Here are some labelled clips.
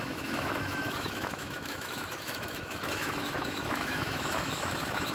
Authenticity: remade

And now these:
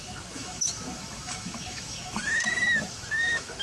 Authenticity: remade